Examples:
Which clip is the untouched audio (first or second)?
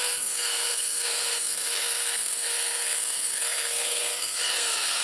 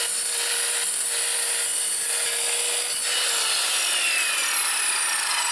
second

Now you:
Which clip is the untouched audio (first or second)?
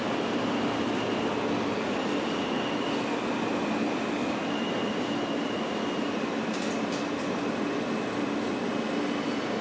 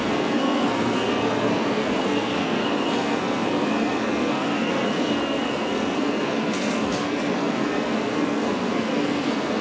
first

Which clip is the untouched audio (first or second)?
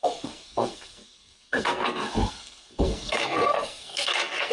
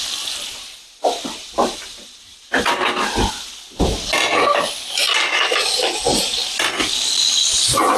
second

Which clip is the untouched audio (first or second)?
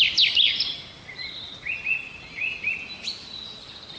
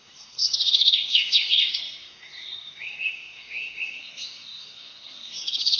first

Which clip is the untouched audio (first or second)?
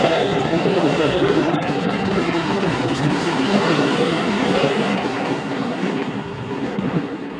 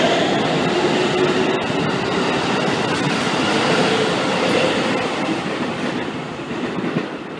second